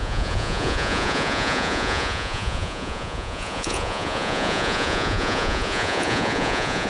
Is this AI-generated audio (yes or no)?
yes